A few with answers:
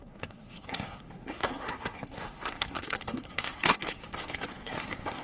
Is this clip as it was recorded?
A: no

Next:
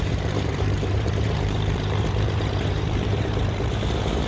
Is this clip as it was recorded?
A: no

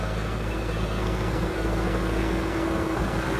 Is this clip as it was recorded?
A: no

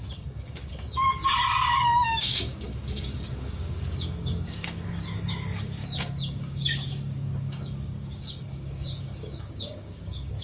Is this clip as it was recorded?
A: no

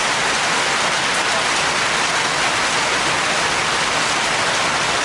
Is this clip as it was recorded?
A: yes